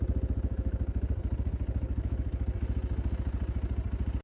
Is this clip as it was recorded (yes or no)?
yes